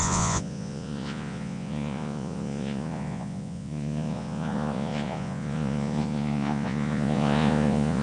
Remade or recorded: remade